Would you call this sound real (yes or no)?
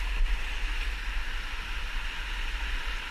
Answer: yes